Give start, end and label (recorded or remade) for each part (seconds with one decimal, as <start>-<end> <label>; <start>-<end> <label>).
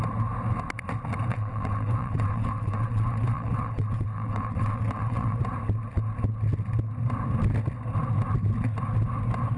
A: 0.0-1.3 recorded; 1.3-5.4 remade; 5.4-9.6 recorded